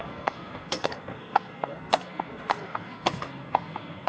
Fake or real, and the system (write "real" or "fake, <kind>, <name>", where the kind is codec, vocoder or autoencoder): fake, codec, SNAC